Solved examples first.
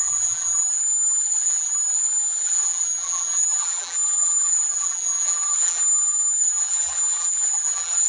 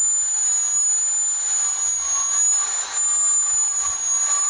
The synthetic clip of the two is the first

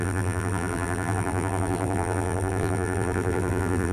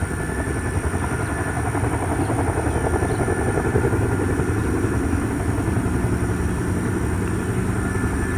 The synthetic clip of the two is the first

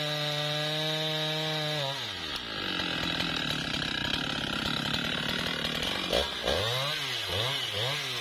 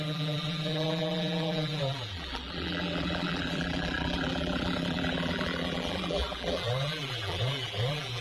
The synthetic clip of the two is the second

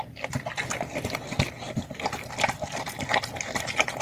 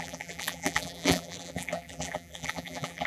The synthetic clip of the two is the second